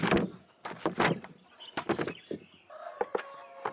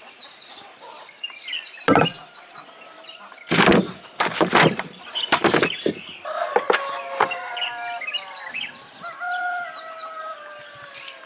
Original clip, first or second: first